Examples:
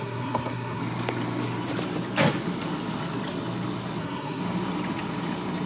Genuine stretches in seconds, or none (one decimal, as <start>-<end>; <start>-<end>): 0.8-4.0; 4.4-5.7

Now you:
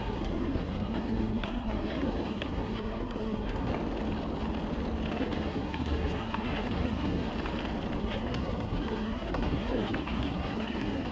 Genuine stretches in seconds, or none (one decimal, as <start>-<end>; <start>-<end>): 3.7-5.1; 7.3-8.0

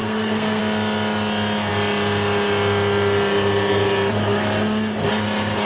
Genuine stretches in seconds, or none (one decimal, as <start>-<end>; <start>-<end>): 0.6-5.7

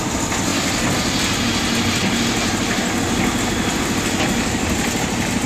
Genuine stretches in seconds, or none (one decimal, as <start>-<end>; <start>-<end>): 0.0-5.5

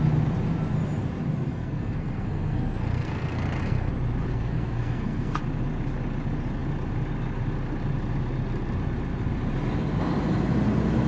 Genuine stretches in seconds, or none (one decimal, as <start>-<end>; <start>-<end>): 0.0-1.5; 3.9-4.3; 5.4-11.1

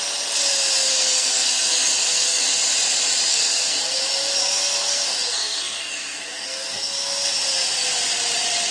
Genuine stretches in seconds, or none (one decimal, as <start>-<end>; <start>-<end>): 0.0-0.9; 2.4-3.3; 4.0-4.4; 7.3-8.7

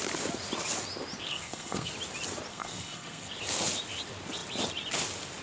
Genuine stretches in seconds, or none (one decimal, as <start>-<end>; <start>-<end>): 0.0-1.3; 1.9-2.5; 3.3-5.4

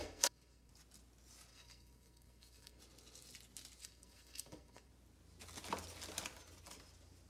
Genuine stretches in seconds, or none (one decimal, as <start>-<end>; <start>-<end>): 0.7-1.5; 2.8-3.8; 4.9-7.3